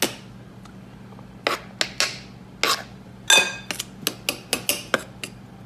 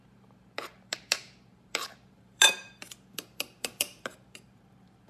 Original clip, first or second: first